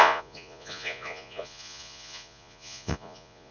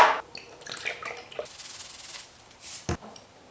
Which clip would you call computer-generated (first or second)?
first